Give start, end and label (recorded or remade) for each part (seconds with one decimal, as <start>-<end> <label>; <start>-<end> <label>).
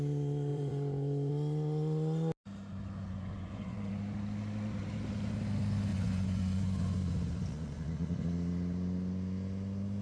0.0-0.5 recorded; 0.5-1.3 remade; 1.3-3.1 recorded; 3.1-3.9 remade; 3.9-5.9 recorded; 5.9-8.2 remade; 8.2-10.0 recorded